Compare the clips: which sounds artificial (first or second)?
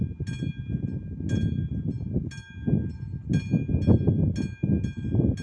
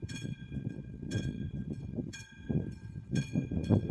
second